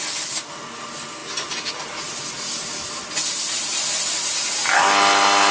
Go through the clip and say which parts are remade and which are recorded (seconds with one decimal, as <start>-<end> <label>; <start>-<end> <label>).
0.0-5.5 recorded